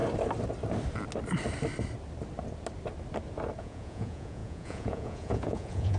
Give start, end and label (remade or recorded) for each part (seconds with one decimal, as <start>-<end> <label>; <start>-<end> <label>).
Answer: 0.0-3.6 recorded; 3.6-6.0 remade

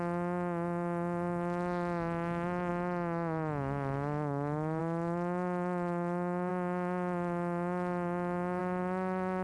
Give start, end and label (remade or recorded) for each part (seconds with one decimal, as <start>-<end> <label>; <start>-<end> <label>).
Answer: 0.0-9.4 recorded

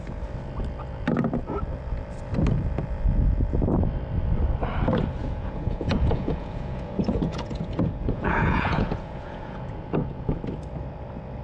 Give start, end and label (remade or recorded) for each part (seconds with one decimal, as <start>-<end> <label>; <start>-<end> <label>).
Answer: 0.0-5.2 recorded; 5.2-10.4 remade; 10.4-11.4 recorded